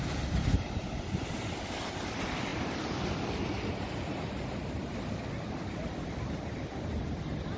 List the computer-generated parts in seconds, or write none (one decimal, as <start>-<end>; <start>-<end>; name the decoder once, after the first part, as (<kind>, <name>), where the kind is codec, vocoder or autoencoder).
none